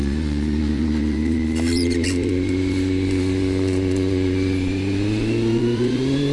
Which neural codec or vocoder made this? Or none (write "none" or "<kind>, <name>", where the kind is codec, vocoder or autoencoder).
vocoder, Vocos